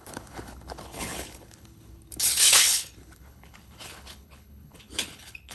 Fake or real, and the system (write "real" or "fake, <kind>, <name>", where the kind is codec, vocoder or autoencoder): fake, codec, HILCodec